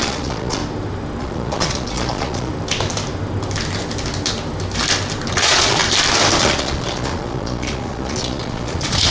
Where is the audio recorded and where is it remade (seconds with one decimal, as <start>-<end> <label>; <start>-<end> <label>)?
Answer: 0.0-0.6 remade; 0.6-1.2 recorded; 1.2-2.5 remade; 2.5-5.3 recorded; 5.3-5.8 remade; 5.8-6.4 recorded; 6.4-9.1 remade